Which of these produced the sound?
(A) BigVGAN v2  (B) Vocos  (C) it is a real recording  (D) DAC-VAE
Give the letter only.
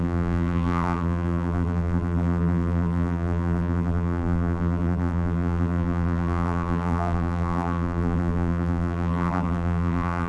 A